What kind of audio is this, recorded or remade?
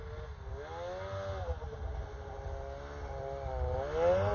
recorded